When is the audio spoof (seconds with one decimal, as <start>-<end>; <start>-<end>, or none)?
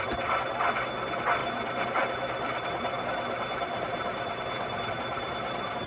none